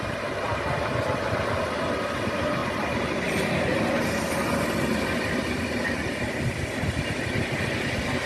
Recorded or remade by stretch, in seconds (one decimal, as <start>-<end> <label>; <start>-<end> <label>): 0.0-8.3 recorded